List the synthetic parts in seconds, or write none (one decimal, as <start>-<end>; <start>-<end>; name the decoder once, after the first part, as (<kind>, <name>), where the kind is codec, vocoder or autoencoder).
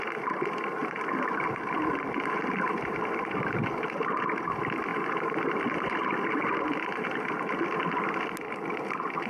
0.8-2.3 (vocoder, BigVGAN v2)